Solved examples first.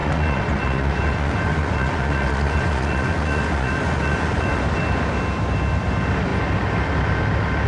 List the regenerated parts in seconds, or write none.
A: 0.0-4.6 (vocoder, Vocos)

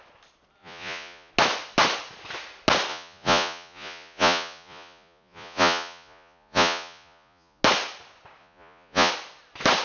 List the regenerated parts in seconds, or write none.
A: 0.6-1.3 (vocoder, Vocos); 2.9-7.6; 8.4-9.1